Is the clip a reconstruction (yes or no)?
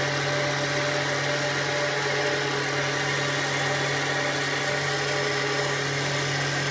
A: no